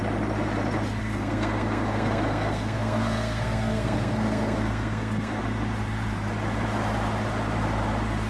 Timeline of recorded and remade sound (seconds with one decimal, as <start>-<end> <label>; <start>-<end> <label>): 0.0-1.0 recorded; 1.0-5.4 remade; 5.4-8.3 recorded